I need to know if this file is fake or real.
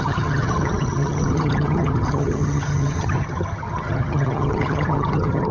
fake